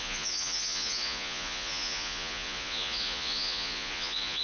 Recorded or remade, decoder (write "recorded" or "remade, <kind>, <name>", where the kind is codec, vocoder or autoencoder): remade, vocoder, Vocos